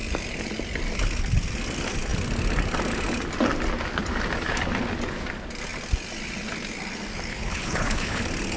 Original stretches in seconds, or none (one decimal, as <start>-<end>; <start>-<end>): 0.0-7.3; 8.2-8.6